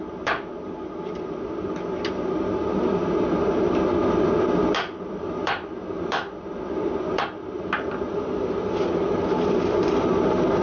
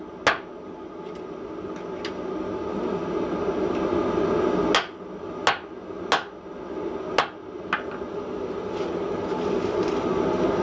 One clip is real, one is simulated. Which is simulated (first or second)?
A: first